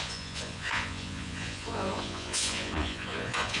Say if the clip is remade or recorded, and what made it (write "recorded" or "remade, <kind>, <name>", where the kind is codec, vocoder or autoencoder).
remade, vocoder, Vocos